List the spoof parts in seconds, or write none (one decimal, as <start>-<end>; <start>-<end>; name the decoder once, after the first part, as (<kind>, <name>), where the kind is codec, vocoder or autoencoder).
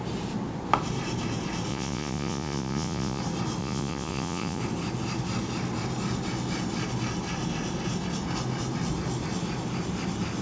1.7-3.2 (vocoder, Vocos); 3.6-4.6